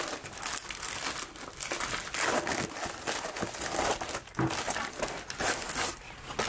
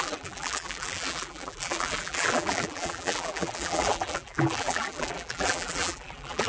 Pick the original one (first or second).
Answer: first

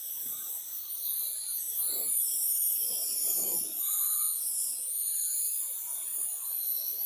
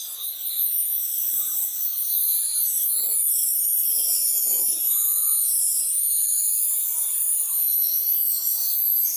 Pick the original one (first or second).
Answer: second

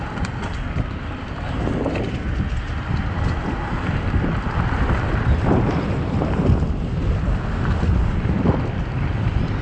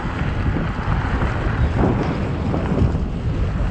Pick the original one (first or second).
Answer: second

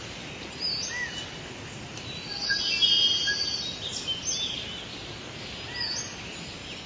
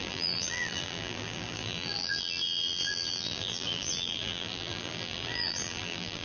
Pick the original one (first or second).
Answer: first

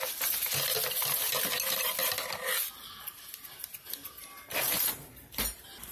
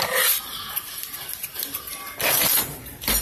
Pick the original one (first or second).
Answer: first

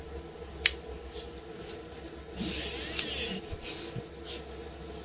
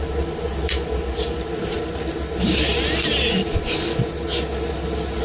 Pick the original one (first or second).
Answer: first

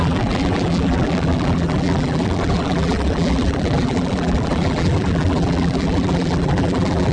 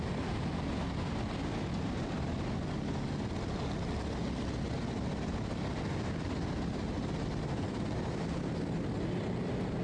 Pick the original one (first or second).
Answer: second